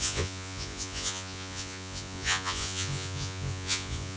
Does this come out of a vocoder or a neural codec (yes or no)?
yes